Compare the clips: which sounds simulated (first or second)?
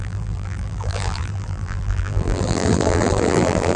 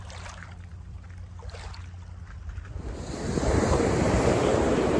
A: first